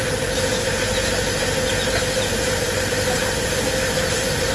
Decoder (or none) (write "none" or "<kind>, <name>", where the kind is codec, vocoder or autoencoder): vocoder, BigVGAN v2